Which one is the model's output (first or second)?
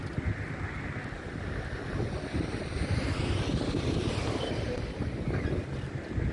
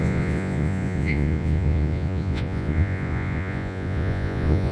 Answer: second